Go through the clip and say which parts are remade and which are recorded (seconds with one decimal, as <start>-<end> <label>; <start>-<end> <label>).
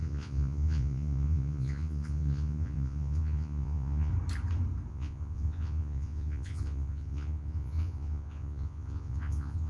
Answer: 0.0-4.1 remade; 4.1-4.9 recorded; 4.9-9.7 remade